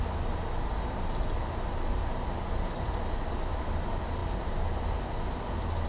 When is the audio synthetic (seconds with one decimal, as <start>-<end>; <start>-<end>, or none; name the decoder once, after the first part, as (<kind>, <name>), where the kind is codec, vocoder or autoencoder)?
none